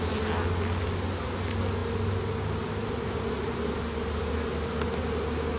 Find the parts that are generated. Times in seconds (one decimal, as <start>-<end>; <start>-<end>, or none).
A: none